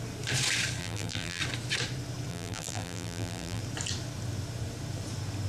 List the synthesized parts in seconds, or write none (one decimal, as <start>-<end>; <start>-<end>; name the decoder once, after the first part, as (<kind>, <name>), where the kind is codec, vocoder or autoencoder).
0.8-1.4 (vocoder, BigVGAN v2); 2.3-3.6